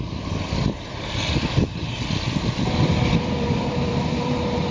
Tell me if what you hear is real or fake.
fake